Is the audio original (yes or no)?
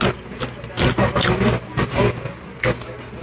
yes